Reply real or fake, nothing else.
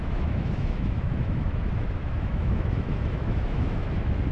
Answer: fake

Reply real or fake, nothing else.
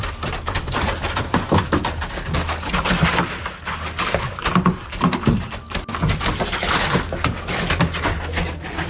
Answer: real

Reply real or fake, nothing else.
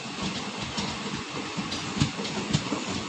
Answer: fake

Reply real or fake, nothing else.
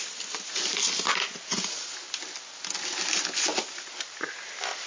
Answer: real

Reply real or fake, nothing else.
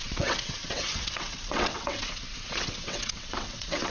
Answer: fake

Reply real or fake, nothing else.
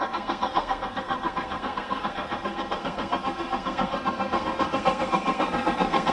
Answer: fake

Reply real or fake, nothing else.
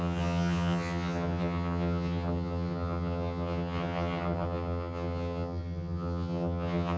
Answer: fake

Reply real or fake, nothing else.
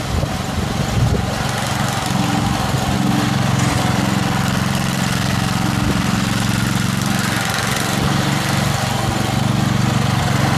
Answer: real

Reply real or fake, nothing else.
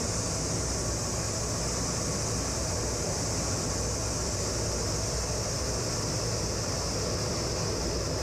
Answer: real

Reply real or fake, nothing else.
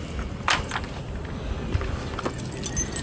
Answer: real